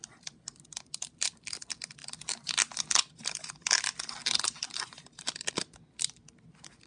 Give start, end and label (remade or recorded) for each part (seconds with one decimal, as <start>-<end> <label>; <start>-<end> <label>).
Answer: 0.0-6.9 recorded